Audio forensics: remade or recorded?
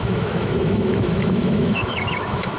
remade